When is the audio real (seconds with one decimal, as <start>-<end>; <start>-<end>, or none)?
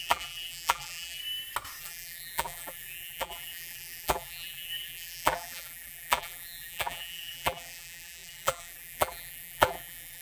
1.2-1.8